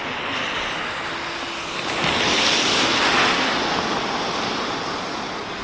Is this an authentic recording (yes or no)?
yes